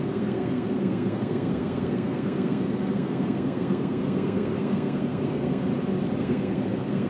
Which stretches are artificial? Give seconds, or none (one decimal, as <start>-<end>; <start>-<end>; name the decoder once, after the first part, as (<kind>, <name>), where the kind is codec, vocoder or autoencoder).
0.0-5.7 (codec, SNAC); 6.2-7.1